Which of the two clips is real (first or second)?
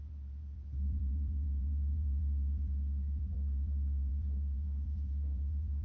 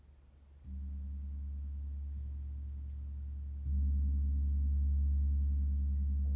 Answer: second